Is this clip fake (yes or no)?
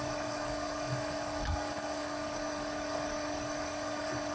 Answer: yes